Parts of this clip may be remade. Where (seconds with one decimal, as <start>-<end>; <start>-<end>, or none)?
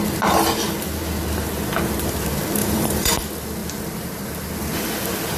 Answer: 2.6-3.1